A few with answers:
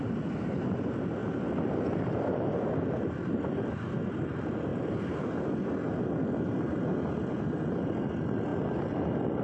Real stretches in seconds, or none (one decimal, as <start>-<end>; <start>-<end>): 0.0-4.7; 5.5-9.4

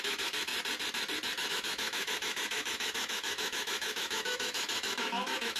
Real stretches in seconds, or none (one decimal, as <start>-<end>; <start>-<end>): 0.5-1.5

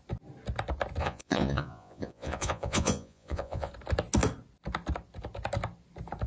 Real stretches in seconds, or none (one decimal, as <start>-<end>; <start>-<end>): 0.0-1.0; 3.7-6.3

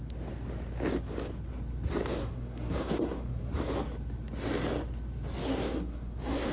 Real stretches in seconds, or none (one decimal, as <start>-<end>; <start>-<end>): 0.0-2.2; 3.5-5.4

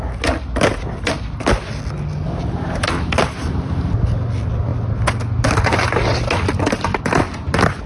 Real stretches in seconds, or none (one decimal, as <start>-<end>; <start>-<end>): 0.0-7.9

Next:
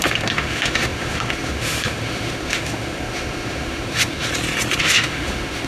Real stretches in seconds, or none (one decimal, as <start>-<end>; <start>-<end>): 4.3-4.8

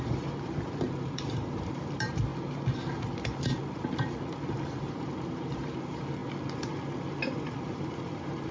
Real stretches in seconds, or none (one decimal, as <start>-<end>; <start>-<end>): 2.3-4.9; 6.2-7.5